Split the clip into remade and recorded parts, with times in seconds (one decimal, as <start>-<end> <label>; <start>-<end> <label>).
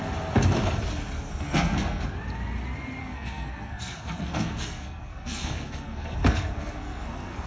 0.0-1.3 recorded; 1.3-2.0 remade; 2.0-3.0 recorded; 3.0-7.5 remade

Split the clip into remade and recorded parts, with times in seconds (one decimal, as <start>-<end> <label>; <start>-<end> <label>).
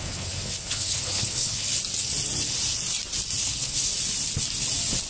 0.0-1.7 remade; 1.7-3.4 recorded; 3.4-3.9 remade; 3.9-5.1 recorded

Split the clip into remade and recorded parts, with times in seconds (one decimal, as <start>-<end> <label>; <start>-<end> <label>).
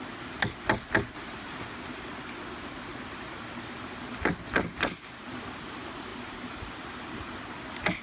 0.0-8.0 recorded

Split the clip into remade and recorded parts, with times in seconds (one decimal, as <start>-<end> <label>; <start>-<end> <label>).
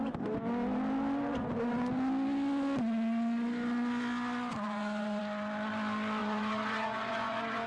0.0-4.5 recorded; 4.5-5.2 remade; 5.2-6.2 recorded; 6.2-7.7 remade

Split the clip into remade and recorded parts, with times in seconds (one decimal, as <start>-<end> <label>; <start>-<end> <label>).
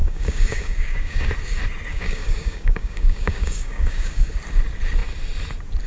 0.0-1.3 remade; 1.3-1.9 recorded; 1.9-4.3 remade; 4.3-5.9 recorded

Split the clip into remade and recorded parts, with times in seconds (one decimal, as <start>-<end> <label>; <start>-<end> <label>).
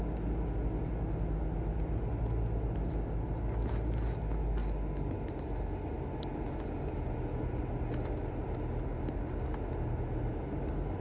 0.0-11.0 recorded